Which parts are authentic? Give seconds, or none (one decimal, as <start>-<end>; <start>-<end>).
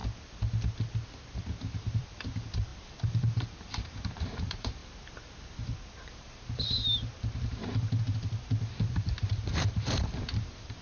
0.0-1.6